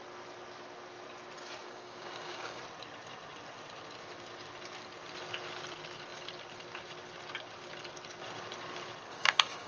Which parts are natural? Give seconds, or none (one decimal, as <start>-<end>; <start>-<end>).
0.0-1.6; 2.6-9.1